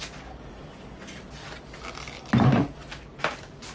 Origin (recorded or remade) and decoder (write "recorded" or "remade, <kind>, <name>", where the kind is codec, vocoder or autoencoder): recorded